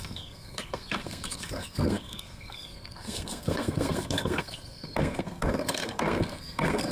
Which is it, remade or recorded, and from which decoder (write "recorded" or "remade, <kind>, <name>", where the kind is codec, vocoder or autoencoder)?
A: remade, codec, SNAC